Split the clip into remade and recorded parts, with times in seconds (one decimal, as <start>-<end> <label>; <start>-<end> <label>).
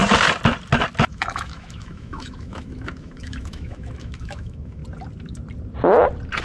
0.0-1.1 recorded; 1.1-4.8 remade; 4.8-6.4 recorded